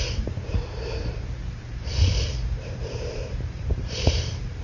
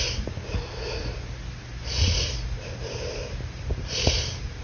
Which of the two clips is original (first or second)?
second